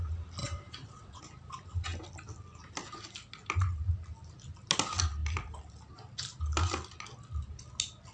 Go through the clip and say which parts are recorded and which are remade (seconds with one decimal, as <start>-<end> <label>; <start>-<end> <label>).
0.0-0.4 recorded; 0.4-1.2 remade; 1.2-8.1 recorded